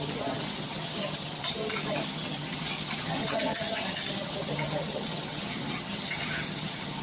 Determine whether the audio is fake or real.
fake